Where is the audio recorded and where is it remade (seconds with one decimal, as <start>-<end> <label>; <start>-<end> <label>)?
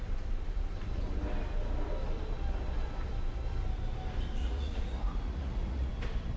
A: 0.0-4.4 recorded; 4.4-5.9 remade; 5.9-6.4 recorded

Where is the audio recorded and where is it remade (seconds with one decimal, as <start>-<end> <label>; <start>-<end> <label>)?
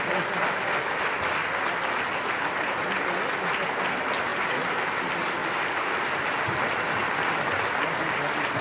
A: 0.0-8.6 recorded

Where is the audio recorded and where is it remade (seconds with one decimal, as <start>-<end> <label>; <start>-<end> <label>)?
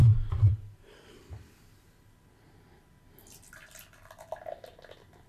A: 0.0-1.3 remade; 1.3-5.3 recorded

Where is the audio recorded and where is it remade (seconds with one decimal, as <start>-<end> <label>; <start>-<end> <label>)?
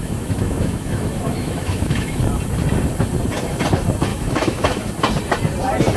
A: 0.0-2.2 remade; 2.2-4.1 recorded; 4.1-4.9 remade; 4.9-6.0 recorded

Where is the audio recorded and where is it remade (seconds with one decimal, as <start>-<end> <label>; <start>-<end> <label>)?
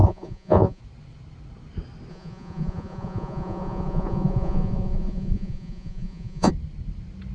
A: 0.0-0.8 remade; 0.8-2.1 recorded; 2.1-6.5 remade; 6.5-7.3 recorded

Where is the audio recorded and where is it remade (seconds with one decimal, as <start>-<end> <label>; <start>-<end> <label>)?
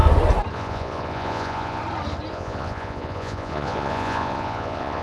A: 0.0-0.5 recorded; 0.5-1.8 remade; 1.8-2.3 recorded; 2.3-5.0 remade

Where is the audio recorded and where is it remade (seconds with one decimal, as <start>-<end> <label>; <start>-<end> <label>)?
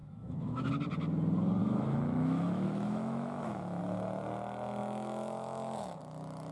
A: 0.0-0.7 remade; 0.7-1.6 recorded; 1.6-3.8 remade; 3.8-4.8 recorded; 4.8-6.0 remade; 6.0-6.5 recorded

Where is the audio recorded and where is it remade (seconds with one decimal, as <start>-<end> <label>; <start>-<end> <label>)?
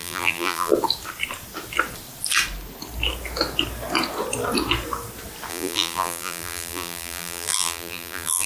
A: 0.0-0.7 remade; 0.7-5.5 recorded; 5.5-8.5 remade